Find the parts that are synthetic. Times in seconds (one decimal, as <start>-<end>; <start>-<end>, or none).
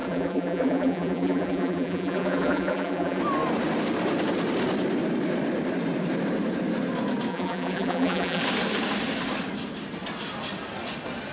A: 0.0-3.2; 7.3-8.4